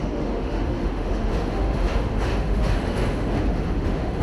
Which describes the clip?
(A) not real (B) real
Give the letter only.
A